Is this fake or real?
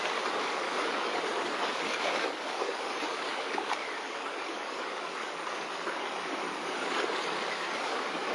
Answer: fake